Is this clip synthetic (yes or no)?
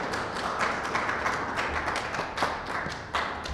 no